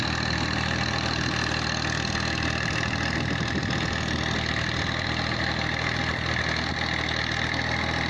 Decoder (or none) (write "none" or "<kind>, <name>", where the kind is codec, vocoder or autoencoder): none